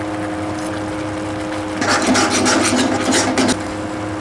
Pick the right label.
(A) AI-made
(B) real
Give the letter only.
B